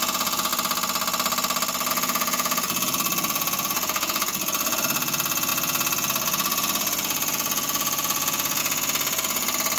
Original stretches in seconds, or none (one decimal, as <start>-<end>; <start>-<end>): 0.5-1.9